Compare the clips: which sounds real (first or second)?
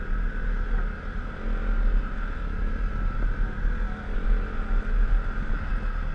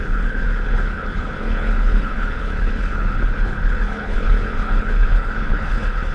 first